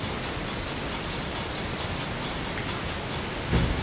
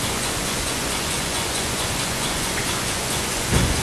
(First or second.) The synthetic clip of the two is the second